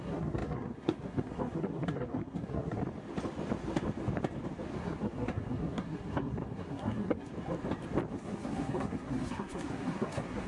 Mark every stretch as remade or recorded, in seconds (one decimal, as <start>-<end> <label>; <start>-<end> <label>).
0.0-2.8 remade; 2.8-4.8 recorded; 4.8-7.3 remade; 7.3-8.1 recorded; 8.1-10.5 remade